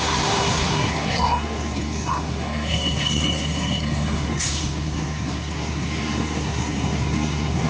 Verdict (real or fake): fake